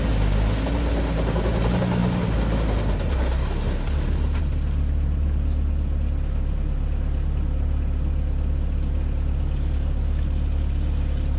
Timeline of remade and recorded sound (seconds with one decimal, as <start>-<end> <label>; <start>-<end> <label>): 0.0-11.4 recorded